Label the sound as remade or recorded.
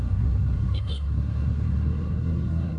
remade